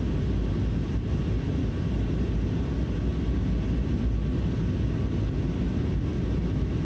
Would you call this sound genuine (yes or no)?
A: yes